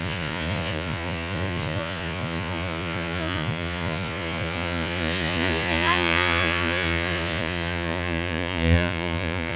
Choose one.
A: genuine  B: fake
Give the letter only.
B